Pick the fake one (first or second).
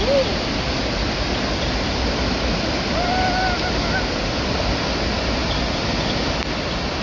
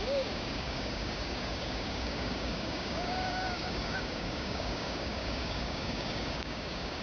second